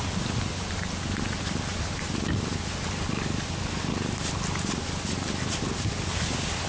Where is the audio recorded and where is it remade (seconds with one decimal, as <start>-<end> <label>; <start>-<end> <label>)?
0.0-6.7 recorded